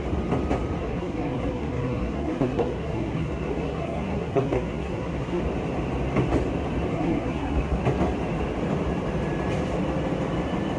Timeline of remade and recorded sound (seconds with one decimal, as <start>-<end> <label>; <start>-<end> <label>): 0.0-0.8 recorded; 0.8-5.4 remade; 5.4-6.9 recorded; 6.9-7.8 remade; 7.8-10.8 recorded